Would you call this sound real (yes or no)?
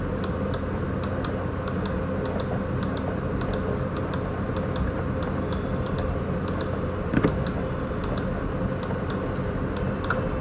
yes